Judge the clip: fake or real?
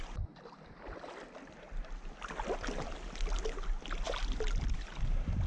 real